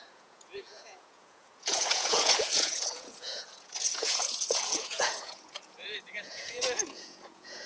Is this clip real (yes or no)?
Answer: no